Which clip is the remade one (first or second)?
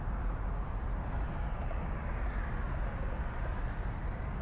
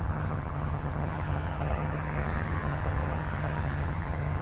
second